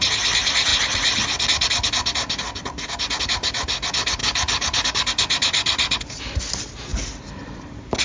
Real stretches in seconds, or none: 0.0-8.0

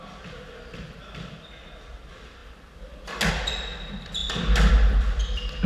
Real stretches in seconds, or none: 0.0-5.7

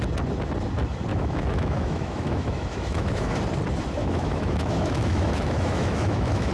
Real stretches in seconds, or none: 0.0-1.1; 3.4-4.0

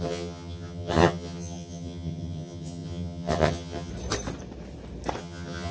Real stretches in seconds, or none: 3.9-5.2